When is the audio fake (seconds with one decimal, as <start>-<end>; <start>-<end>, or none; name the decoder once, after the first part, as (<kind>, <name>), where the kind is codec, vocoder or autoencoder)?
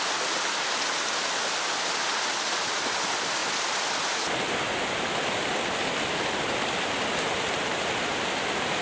none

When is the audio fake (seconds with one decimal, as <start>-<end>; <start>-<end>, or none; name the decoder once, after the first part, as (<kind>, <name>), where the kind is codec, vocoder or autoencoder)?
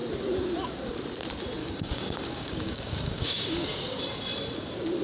1.6-4.0 (codec, DAC)